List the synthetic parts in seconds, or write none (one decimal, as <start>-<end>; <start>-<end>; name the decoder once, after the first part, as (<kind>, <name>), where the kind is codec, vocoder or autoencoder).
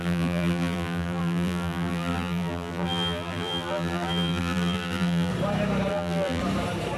0.0-5.3 (vocoder, BigVGAN v2); 5.9-6.4